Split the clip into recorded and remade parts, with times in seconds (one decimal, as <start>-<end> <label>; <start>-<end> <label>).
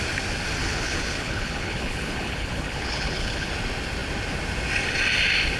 0.0-0.6 recorded; 0.6-3.5 remade; 3.5-5.6 recorded